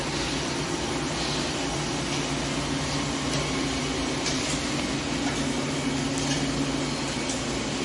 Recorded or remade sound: recorded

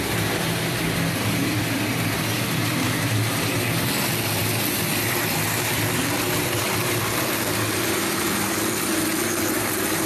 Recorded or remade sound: recorded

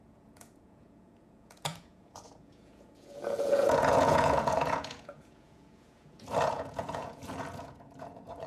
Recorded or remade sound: remade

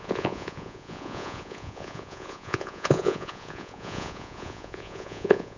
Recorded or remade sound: remade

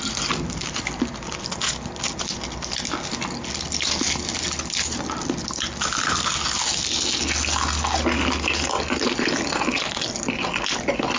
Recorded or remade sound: recorded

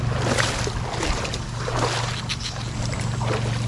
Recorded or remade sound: recorded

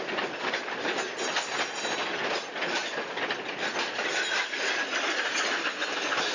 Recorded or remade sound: recorded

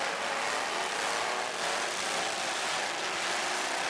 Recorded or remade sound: recorded